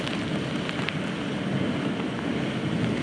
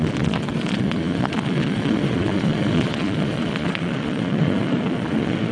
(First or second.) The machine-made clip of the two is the second